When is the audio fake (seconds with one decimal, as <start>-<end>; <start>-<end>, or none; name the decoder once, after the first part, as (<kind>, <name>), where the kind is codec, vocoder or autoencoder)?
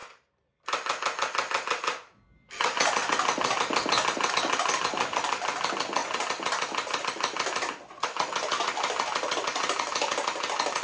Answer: 4.3-6.0 (vocoder, BigVGAN v2); 7.0-10.8